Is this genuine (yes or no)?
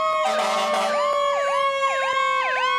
yes